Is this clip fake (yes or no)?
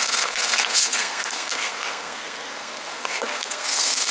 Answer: yes